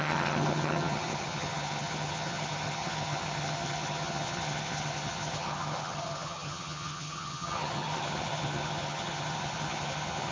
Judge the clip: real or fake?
fake